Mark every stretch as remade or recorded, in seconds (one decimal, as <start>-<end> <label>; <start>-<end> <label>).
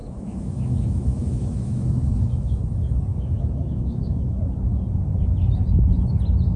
0.0-2.6 remade; 2.6-3.1 recorded; 3.1-4.4 remade; 4.4-6.6 recorded